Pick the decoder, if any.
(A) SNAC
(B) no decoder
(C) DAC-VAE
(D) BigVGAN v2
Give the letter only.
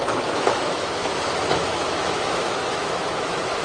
C